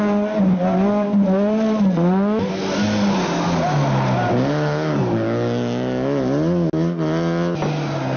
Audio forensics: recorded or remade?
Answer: recorded